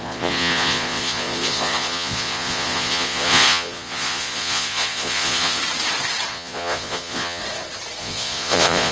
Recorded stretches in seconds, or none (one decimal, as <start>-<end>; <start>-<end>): 5.6-6.3; 7.4-8.0